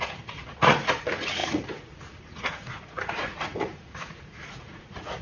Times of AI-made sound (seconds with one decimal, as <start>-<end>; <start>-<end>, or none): 0.0-5.2